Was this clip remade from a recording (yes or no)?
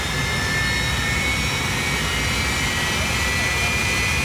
no